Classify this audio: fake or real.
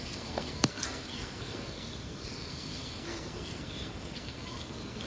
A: fake